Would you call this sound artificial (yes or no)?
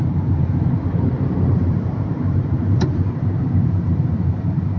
yes